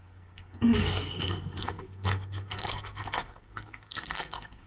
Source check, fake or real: fake